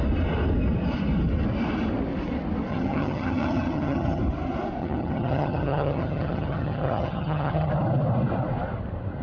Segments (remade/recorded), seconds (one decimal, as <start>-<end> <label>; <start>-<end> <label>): 0.0-2.7 recorded; 2.7-4.2 remade; 4.2-4.8 recorded; 4.8-7.7 remade; 7.7-9.2 recorded